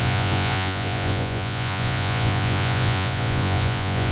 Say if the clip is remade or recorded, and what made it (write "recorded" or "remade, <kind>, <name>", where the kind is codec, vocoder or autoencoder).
remade, vocoder, Vocos